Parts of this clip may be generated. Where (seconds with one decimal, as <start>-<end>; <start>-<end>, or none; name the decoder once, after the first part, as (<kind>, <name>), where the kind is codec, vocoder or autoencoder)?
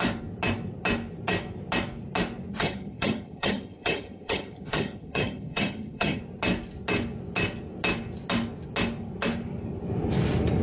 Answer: 2.5-6.2 (vocoder, HiFi-GAN)